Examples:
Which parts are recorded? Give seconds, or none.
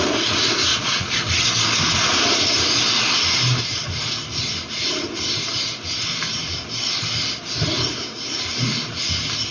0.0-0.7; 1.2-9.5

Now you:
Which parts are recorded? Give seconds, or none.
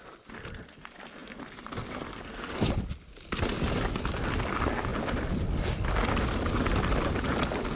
0.0-7.7